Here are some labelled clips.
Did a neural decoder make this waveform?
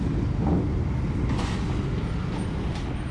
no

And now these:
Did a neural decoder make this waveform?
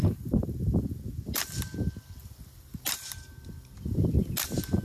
no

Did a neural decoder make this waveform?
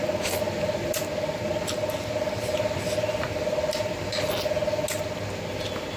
no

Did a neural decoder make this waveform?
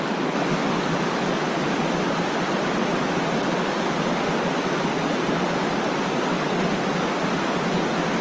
no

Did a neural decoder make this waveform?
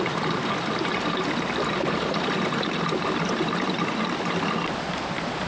no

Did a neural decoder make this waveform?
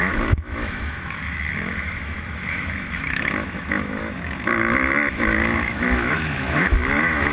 yes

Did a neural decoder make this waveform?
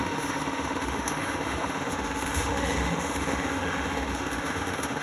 yes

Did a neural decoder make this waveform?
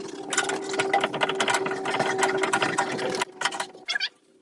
no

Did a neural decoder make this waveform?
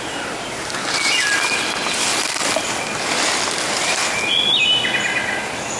no